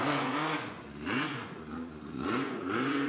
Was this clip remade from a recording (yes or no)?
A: yes